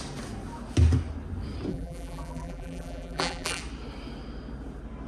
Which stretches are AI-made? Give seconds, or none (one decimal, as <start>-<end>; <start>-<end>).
1.7-3.6